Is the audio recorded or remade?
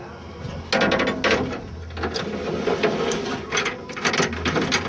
recorded